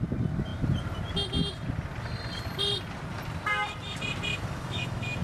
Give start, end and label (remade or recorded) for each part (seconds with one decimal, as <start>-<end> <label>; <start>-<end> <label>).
0.0-4.3 recorded; 4.3-5.2 remade